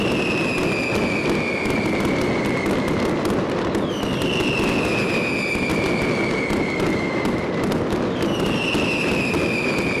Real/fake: real